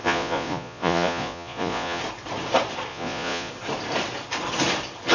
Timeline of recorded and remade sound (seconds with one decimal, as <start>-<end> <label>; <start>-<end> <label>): 0.0-2.0 remade; 2.0-2.9 recorded; 2.9-3.5 remade; 3.5-5.1 recorded